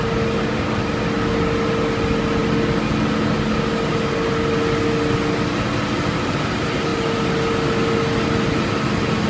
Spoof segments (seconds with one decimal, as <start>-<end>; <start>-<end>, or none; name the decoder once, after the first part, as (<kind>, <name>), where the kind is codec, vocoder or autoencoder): none